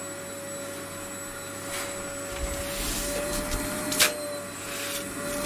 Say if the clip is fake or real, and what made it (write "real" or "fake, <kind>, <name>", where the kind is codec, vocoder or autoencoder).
real